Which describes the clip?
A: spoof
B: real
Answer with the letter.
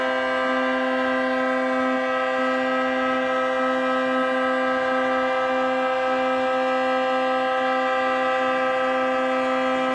B